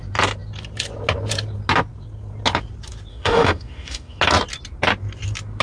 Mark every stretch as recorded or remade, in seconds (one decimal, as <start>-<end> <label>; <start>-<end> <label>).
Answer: 0.0-3.1 recorded; 3.1-4.2 remade; 4.2-5.6 recorded